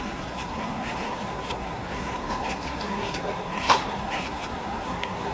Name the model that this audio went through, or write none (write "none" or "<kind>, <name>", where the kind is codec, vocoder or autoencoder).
codec, SNAC